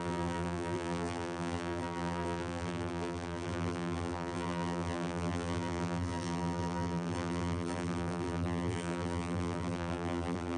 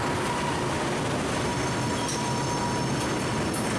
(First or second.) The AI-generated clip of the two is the first